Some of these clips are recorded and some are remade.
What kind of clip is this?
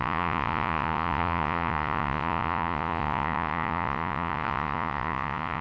remade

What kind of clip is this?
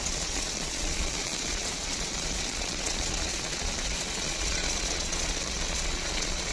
remade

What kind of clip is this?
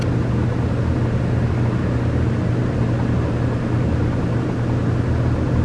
recorded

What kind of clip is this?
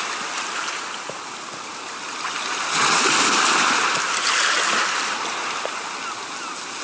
recorded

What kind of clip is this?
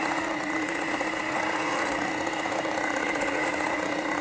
remade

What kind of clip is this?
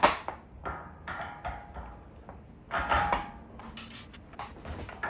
recorded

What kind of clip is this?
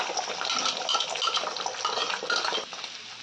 recorded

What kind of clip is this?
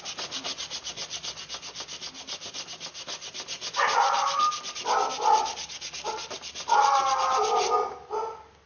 recorded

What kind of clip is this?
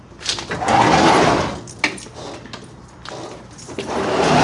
recorded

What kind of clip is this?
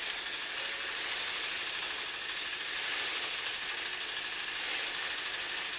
recorded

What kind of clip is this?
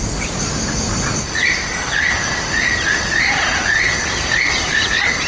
recorded